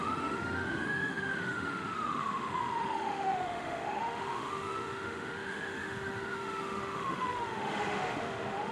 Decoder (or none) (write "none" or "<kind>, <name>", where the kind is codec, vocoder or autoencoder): autoencoder, DAC-VAE